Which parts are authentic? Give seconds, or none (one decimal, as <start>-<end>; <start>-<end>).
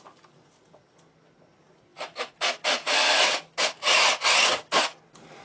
0.0-5.4